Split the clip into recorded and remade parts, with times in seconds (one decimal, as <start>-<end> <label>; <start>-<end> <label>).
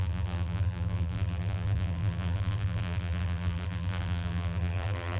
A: 0.0-5.2 remade